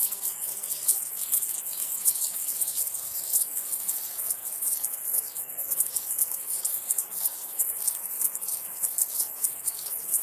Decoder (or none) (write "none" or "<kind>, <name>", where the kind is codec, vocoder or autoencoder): codec, SNAC